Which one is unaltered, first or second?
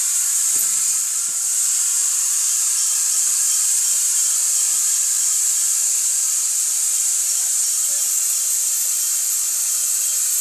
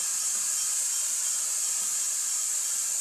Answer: second